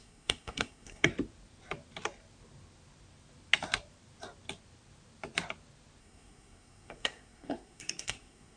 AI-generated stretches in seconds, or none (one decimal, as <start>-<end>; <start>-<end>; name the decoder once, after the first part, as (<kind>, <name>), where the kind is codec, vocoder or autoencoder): 0.0-1.1 (codec, SNAC); 6.0-8.6